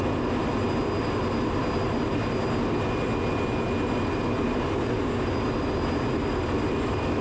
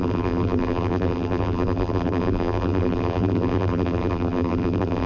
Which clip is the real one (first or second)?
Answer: first